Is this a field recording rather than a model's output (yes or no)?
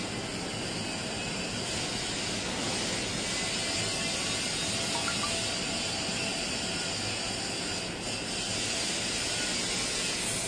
yes